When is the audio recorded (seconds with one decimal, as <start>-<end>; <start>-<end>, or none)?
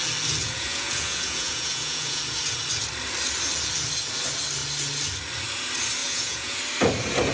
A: 0.0-0.4; 2.2-6.0; 6.6-7.3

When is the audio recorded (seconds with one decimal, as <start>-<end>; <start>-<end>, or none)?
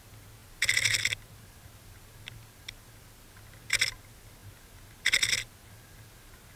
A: 0.0-6.6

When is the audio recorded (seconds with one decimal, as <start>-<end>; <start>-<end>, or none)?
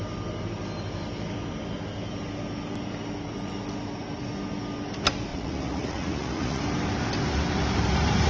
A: 0.0-5.3; 6.6-8.3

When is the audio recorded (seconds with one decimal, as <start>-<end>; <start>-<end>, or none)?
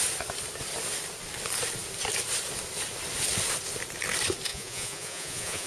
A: 0.0-4.5